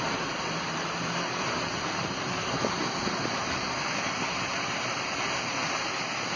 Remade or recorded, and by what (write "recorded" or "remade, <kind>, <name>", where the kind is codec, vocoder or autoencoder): remade, vocoder, BigVGAN v2